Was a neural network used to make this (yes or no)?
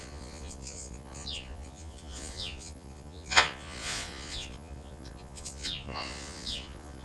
yes